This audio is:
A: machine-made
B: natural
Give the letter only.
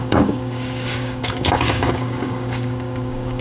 A